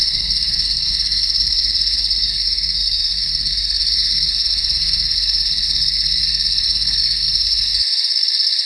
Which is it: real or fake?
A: fake